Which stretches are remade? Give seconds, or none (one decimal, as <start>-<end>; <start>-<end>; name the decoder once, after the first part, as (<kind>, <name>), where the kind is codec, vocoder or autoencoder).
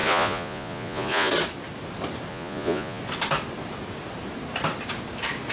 0.0-1.3 (vocoder, Vocos); 2.3-3.0